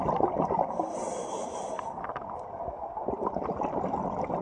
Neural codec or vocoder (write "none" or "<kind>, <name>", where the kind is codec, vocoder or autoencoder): none